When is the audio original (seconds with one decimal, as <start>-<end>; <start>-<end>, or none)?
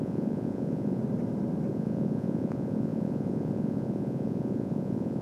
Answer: 1.0-1.7